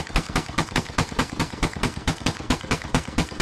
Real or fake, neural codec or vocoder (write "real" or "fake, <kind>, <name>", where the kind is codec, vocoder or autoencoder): fake, codec, SNAC